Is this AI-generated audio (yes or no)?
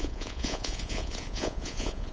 yes